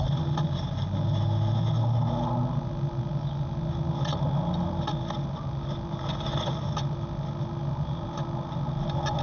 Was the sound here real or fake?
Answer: real